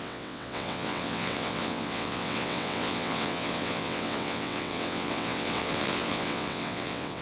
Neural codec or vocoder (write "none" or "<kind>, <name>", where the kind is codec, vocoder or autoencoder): vocoder, WaveNeXt